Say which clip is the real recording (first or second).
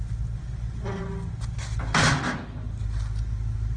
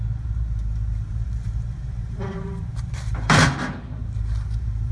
first